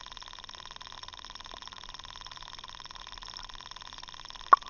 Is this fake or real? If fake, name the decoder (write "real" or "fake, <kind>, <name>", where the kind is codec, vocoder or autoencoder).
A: real